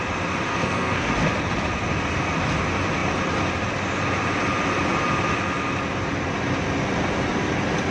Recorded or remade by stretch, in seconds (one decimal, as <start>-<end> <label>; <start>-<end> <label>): 0.0-0.5 recorded; 0.5-1.1 remade; 1.1-7.9 recorded